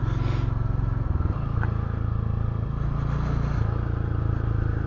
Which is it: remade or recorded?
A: recorded